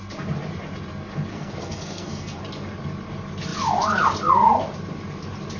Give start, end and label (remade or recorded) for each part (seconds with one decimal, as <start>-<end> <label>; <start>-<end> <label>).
0.0-1.3 recorded; 1.3-2.4 remade; 2.4-5.6 recorded